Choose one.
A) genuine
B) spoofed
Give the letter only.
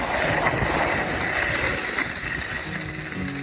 A